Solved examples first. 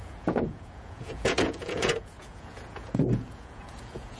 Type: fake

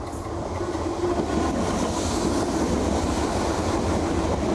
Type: real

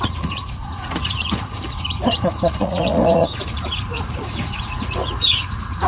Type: fake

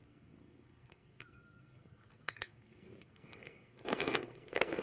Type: fake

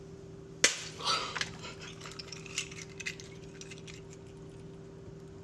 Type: real